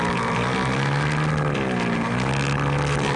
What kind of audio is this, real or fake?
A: real